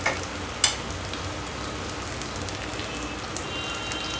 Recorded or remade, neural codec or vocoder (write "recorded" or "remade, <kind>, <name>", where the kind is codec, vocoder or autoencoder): recorded